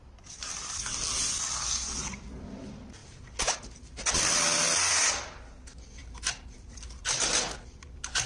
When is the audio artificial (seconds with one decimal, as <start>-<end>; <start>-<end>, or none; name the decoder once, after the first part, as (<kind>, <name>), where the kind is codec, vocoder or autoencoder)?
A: none